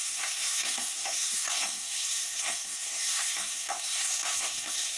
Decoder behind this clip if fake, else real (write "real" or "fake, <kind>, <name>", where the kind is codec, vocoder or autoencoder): fake, codec, SNAC